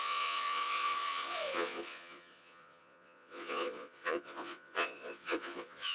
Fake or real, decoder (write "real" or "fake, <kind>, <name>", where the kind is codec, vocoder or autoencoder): fake, vocoder, Vocos